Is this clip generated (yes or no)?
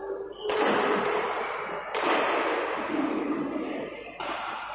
no